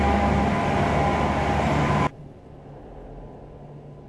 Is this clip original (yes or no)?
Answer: yes